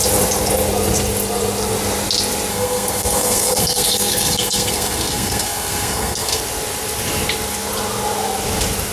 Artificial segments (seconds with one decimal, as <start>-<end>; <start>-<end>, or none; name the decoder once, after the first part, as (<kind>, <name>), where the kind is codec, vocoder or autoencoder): 2.5-6.4 (codec, SNAC)